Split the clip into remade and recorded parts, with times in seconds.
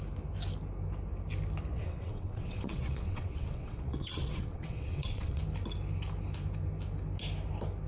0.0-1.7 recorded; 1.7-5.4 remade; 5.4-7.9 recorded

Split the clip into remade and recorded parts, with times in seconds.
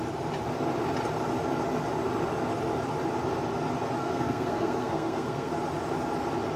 0.0-4.0 recorded; 4.0-5.5 remade; 5.5-6.6 recorded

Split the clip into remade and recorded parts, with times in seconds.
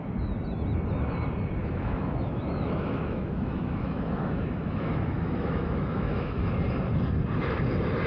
0.0-1.6 recorded; 1.6-6.5 remade; 6.5-8.1 recorded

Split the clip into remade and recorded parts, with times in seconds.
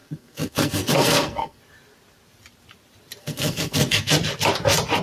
0.0-1.6 remade; 1.6-3.2 recorded; 3.2-4.1 remade; 4.1-5.0 recorded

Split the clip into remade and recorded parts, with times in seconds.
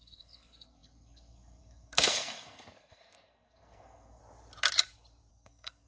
0.0-4.2 remade; 4.2-5.3 recorded; 5.3-5.9 remade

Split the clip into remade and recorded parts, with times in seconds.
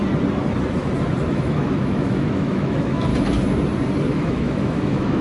0.0-1.3 recorded; 1.3-3.1 remade; 3.1-4.1 recorded; 4.1-5.2 remade